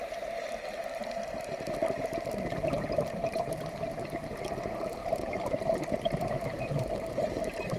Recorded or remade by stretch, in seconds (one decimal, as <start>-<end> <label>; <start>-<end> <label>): 0.0-3.2 recorded; 3.2-4.3 remade; 4.3-5.0 recorded; 5.0-7.8 remade